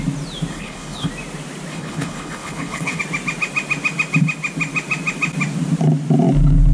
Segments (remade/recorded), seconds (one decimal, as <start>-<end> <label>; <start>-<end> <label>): 0.0-0.5 recorded; 0.5-1.1 remade; 1.1-1.7 recorded; 1.7-3.0 remade; 3.0-6.7 recorded